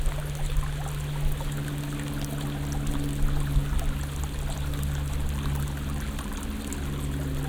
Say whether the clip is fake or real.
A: real